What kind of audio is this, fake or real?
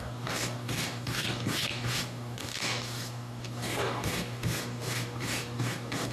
fake